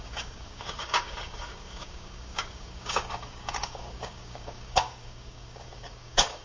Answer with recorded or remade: remade